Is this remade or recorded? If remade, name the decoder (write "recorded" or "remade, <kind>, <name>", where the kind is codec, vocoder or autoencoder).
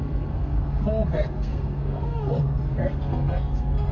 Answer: remade, codec, SNAC